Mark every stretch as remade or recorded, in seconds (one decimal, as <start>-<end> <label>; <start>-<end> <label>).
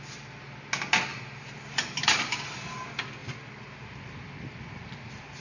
0.0-1.1 recorded; 1.1-2.4 remade; 2.4-5.4 recorded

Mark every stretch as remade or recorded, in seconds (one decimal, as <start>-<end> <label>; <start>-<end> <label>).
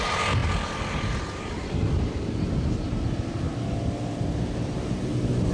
0.0-5.5 recorded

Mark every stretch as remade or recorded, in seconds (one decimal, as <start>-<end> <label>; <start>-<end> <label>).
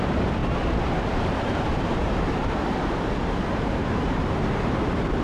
0.0-5.2 remade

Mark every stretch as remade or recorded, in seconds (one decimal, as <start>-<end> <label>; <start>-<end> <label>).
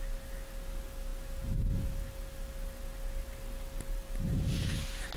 0.0-5.2 recorded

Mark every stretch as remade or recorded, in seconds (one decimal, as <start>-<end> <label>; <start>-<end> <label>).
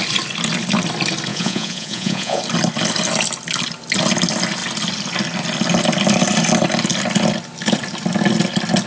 0.0-1.3 recorded; 1.3-2.4 remade; 2.4-8.9 recorded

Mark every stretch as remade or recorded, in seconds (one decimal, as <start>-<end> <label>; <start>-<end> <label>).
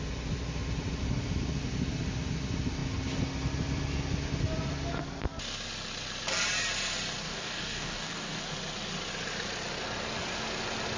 0.0-7.2 recorded; 7.2-8.4 remade; 8.4-11.0 recorded